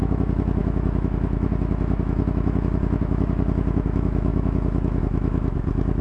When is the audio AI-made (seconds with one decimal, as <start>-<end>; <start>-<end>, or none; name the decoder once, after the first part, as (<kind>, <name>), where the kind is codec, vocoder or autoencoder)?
0.0-6.0 (autoencoder, DAC-VAE)